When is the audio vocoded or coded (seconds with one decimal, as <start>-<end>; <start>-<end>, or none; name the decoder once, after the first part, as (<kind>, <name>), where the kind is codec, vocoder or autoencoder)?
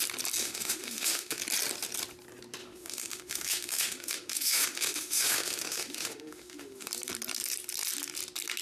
0.4-1.4 (autoencoder, DAC-VAE); 2.6-6.9